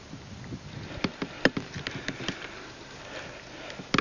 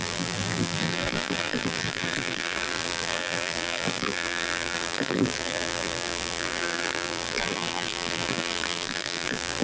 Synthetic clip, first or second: second